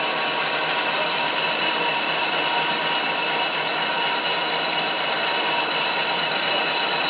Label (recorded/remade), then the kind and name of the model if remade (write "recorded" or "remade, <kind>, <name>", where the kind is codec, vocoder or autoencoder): recorded